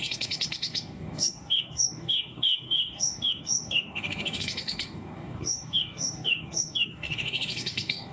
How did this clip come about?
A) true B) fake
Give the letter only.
B